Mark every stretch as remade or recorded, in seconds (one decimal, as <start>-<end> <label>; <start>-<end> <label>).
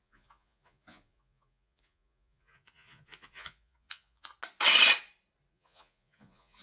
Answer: 0.0-4.3 remade; 4.3-5.5 recorded; 5.5-6.6 remade